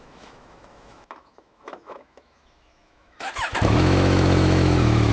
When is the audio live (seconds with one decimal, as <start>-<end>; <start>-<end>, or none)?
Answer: none